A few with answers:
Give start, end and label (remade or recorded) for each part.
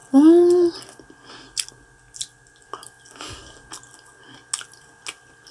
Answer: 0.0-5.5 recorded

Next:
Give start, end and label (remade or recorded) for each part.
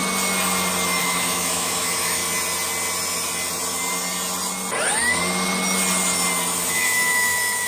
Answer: 0.0-1.0 recorded; 1.0-2.2 remade; 2.2-6.7 recorded; 6.7-7.7 remade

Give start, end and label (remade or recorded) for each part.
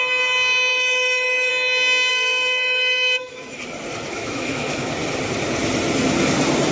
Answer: 0.0-0.7 recorded; 0.7-1.5 remade; 1.5-2.1 recorded; 2.1-3.6 remade; 3.6-4.1 recorded; 4.1-4.9 remade; 4.9-6.7 recorded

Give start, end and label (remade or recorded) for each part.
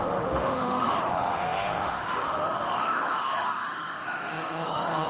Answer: 0.0-5.1 remade